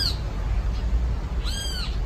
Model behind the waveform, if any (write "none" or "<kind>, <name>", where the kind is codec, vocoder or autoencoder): none